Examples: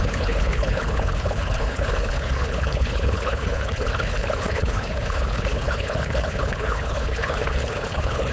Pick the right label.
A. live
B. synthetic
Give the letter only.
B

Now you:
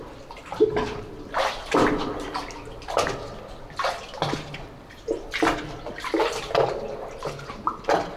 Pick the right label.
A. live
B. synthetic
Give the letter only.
A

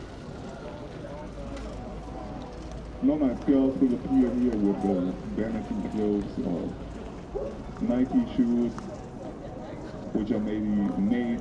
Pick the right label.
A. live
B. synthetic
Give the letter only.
A